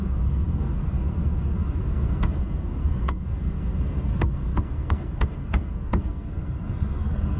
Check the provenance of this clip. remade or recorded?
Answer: remade